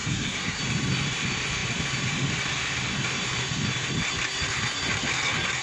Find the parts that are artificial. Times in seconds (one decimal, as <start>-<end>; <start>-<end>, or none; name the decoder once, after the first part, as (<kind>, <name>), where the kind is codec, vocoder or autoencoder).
0.0-0.6 (codec, SNAC)